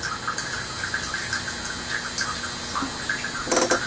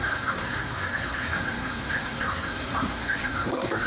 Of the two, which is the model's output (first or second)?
second